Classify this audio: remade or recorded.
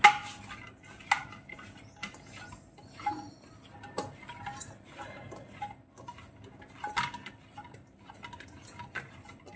recorded